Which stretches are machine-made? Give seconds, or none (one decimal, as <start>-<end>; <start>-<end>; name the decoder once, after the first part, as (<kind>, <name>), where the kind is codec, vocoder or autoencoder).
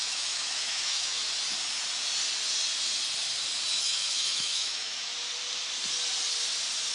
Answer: 0.0-1.2 (autoencoder, DAC-VAE); 3.8-5.1